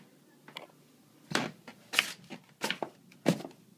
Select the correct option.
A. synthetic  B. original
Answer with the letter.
B